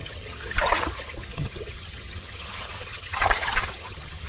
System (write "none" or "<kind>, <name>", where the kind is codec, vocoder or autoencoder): vocoder, HiFi-GAN